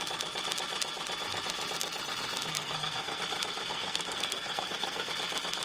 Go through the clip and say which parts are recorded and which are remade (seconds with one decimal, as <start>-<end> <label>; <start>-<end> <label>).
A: 0.0-2.5 recorded; 2.5-3.2 remade; 3.2-3.7 recorded; 3.7-5.1 remade; 5.1-5.6 recorded

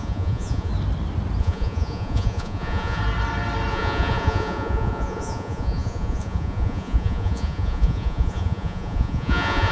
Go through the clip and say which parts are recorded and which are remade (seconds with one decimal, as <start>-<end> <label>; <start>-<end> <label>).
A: 0.0-0.7 remade; 0.7-1.4 recorded; 1.4-3.0 remade; 3.0-3.7 recorded; 3.7-9.7 remade

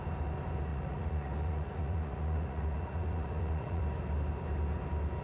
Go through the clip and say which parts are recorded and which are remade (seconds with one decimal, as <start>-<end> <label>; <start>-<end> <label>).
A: 0.0-0.7 recorded; 0.7-3.8 remade; 3.8-5.2 recorded

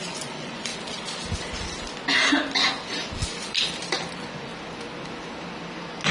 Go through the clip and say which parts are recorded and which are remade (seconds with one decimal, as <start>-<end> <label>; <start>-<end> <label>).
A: 0.0-0.7 remade; 0.7-4.1 recorded; 4.1-4.5 remade; 4.5-6.1 recorded

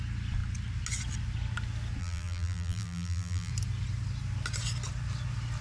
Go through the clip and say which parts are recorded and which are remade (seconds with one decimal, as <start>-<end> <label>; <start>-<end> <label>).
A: 0.0-2.0 recorded; 2.0-3.5 remade; 3.5-5.6 recorded

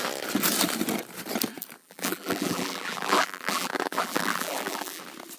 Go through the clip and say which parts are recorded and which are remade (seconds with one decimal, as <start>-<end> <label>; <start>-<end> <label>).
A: 0.0-1.8 recorded; 1.8-5.0 remade; 5.0-5.4 recorded

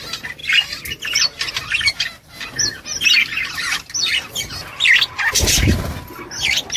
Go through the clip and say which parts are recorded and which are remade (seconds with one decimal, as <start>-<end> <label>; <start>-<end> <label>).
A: 0.0-6.8 recorded